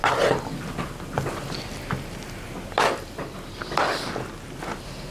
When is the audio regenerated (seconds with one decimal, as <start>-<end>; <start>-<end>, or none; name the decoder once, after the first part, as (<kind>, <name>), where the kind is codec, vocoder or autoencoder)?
none